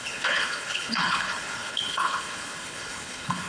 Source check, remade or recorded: remade